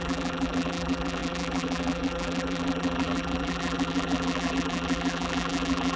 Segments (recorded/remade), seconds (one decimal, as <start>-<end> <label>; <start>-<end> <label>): 0.0-6.0 remade